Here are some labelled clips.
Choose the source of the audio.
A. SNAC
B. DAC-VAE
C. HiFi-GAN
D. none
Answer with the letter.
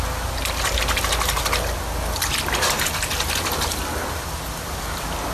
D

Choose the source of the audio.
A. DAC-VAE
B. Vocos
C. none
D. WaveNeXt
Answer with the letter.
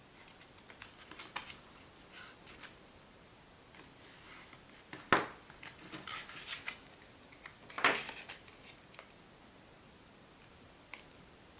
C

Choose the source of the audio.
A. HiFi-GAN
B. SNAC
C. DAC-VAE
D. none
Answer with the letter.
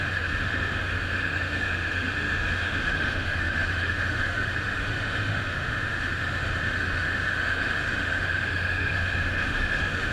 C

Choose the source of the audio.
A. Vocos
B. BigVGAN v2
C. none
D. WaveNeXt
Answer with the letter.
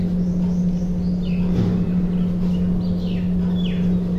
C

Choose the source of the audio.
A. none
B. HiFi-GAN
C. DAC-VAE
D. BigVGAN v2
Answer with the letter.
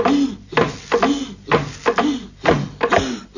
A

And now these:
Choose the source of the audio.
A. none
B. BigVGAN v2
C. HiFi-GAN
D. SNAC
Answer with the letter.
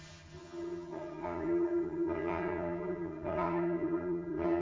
C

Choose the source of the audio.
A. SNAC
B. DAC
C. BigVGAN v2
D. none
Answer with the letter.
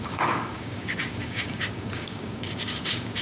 B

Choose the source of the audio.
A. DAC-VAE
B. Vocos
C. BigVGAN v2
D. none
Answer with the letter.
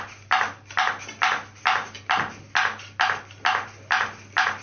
D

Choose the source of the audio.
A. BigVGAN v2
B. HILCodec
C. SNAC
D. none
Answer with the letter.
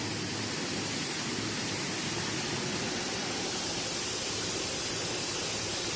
D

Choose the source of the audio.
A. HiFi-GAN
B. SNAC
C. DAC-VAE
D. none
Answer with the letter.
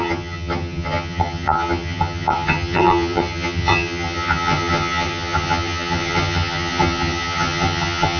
A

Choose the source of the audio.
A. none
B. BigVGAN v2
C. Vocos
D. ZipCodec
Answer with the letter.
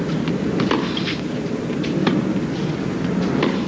A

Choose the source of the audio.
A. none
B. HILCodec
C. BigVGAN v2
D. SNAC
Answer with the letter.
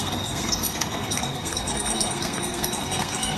D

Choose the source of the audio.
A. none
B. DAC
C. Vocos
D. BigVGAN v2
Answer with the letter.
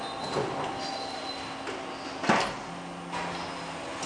A